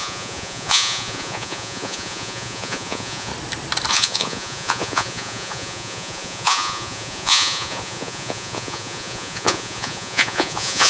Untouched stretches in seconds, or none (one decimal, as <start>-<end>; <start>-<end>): 3.3-3.9